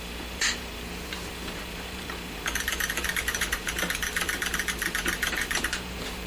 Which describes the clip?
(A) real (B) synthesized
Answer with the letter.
B